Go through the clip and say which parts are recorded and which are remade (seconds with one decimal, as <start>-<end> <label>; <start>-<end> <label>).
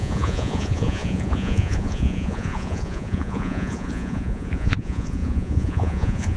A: 0.0-6.4 remade